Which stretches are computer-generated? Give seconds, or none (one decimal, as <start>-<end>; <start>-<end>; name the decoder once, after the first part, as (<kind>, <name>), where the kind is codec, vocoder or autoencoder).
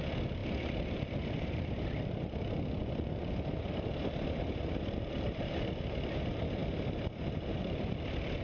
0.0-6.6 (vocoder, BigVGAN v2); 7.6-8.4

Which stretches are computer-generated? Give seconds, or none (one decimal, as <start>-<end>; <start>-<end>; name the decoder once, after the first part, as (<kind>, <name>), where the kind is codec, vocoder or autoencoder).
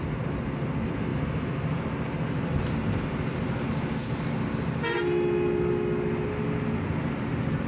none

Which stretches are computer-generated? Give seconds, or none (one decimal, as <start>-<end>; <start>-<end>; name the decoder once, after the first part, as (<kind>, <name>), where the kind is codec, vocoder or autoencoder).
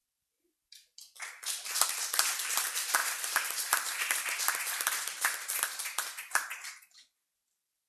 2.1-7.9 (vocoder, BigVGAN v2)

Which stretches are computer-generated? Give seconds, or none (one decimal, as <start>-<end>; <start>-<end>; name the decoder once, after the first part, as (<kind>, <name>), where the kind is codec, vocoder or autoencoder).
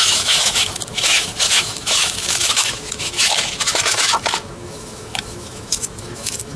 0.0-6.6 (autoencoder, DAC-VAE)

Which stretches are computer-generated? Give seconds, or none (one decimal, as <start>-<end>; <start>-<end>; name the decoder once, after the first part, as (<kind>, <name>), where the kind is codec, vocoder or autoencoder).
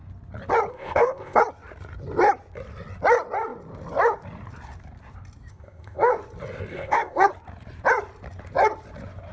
0.7-1.4 (codec, ZipCodec); 5.5-6.1; 6.7-7.3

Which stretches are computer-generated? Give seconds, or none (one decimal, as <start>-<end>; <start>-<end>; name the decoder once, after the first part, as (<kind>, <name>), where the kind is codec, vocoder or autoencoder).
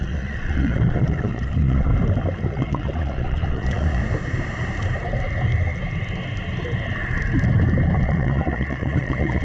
0.0-1.9 (vocoder, Vocos); 2.5-4.0; 8.0-9.4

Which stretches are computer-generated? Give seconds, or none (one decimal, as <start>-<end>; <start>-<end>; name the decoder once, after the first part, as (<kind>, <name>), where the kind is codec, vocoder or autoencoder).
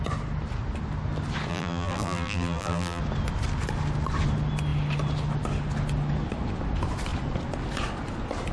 1.5-3.0 (vocoder, BigVGAN v2)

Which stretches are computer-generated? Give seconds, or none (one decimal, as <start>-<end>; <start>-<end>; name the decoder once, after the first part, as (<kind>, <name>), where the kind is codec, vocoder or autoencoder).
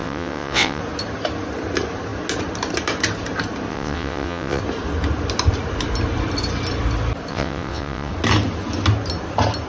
0.0-0.8 (vocoder, WaveNeXt); 3.7-4.6; 7.3-8.1